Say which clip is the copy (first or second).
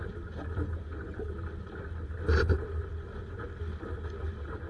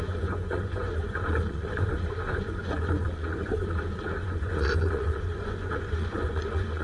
second